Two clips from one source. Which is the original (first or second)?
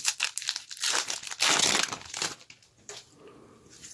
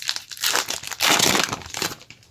first